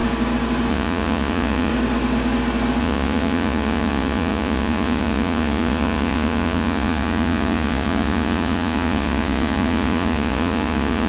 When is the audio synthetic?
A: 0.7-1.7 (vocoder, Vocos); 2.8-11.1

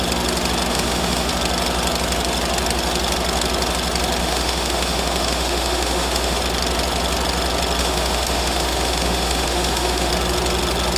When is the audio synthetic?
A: 0.7-1.3 (autoencoder, DAC-VAE); 4.2-6.4; 7.8-10.1

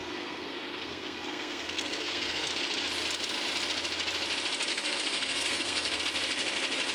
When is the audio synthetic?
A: 0.0-2.5 (codec, SNAC); 4.7-6.0

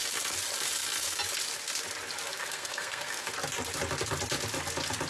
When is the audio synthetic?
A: 2.3-3.3 (codec, SNAC)

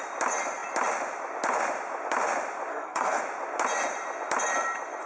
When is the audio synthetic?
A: 2.7-3.2 (codec, SNAC)

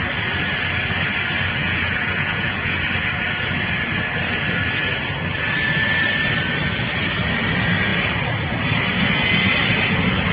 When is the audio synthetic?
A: 1.6-2.8 (vocoder, Vocos)